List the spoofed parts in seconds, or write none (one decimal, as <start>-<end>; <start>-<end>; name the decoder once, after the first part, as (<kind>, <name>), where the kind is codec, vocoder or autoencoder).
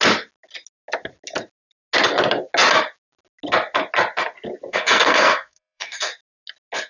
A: 4.7-6.1 (codec, SNAC)